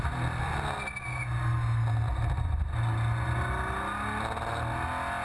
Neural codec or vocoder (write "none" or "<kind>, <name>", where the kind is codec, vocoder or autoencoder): none